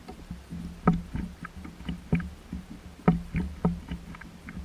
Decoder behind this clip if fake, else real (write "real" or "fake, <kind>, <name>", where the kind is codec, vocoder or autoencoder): real